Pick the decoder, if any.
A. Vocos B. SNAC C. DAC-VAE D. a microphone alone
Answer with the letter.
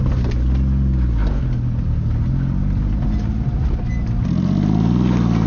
D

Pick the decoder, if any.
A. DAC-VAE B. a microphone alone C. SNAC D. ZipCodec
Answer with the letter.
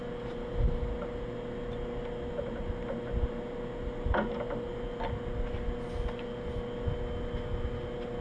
B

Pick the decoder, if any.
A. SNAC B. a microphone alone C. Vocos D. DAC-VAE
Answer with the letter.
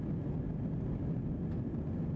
B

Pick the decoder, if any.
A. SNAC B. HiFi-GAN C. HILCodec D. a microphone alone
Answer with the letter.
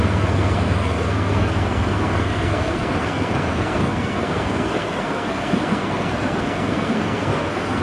A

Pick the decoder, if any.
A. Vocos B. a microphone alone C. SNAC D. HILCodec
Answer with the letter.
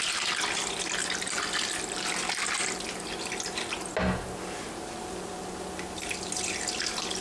B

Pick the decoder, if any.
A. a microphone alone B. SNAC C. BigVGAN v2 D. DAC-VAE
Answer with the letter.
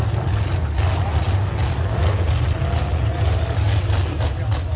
A